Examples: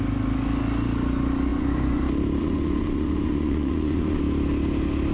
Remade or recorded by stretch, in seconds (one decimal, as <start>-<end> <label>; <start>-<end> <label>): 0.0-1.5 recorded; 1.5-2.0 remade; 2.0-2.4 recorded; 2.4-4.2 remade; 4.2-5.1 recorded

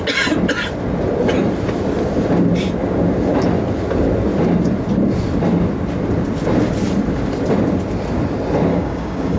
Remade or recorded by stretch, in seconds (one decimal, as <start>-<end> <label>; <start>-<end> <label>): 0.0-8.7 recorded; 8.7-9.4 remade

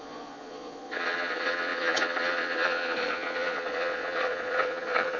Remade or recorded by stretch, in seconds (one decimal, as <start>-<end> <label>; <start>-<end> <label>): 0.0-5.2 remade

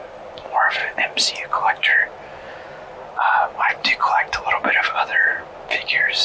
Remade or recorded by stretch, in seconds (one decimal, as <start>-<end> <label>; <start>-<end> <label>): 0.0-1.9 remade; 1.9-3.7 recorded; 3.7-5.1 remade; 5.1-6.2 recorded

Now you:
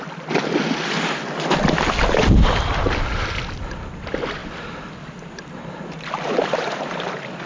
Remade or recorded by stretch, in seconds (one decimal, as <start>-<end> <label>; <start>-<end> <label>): 0.0-4.4 recorded; 4.4-7.5 remade